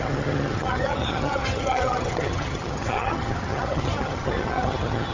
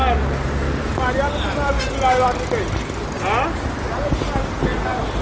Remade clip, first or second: first